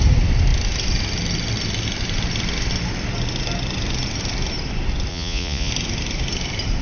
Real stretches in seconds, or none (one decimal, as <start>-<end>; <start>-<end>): 0.0-5.1; 5.7-6.8